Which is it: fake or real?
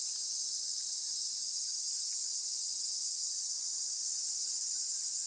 real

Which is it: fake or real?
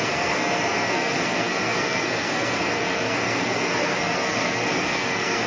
fake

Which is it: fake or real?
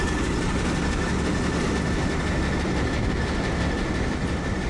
real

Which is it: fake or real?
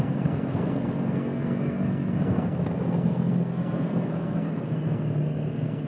fake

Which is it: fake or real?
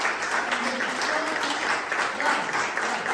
real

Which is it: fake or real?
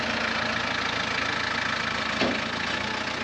real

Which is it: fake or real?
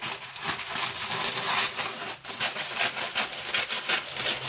real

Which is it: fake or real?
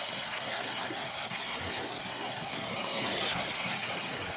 fake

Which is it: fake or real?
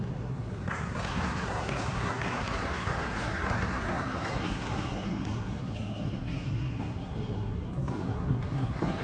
fake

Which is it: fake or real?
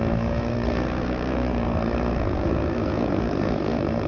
fake